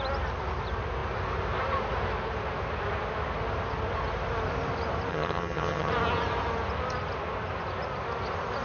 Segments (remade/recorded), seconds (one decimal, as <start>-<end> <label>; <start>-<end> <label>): 0.0-5.1 recorded; 5.1-5.9 remade; 5.9-8.6 recorded